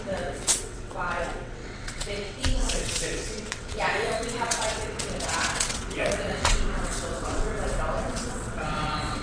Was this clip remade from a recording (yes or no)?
yes